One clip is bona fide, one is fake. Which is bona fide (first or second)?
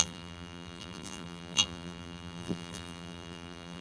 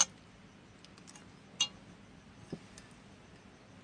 second